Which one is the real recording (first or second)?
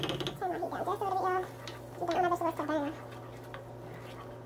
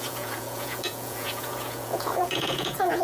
first